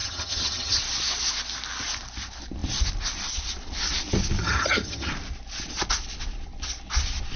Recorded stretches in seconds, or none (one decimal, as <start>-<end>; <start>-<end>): 0.8-4.4; 5.1-7.4